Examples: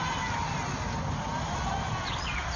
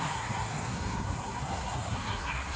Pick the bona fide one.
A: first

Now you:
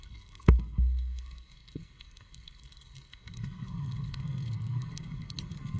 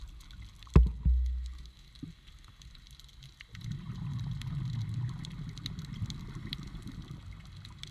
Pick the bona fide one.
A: second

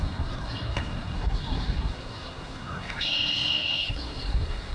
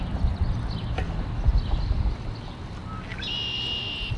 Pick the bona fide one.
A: second